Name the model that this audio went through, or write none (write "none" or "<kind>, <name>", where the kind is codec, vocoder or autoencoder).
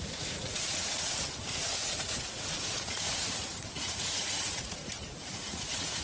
vocoder, Vocos